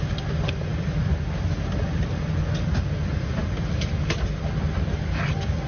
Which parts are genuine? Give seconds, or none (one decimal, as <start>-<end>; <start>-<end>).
0.0-5.7

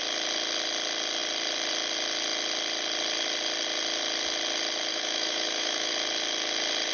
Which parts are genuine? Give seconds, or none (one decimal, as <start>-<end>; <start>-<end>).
0.0-4.9; 5.9-6.9

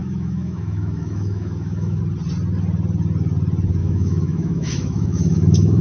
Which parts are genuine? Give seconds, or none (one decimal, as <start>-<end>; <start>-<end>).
2.0-3.8

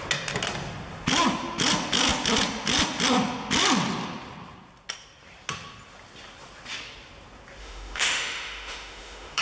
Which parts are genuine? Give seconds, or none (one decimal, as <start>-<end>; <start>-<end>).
0.0-7.6

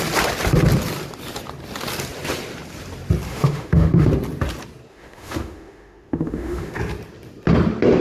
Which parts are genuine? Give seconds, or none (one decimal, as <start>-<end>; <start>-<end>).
0.0-3.3; 4.1-4.9; 6.8-8.0

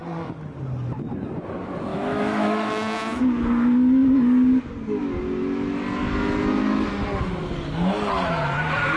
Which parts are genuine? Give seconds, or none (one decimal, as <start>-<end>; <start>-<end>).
0.0-1.9; 3.2-9.0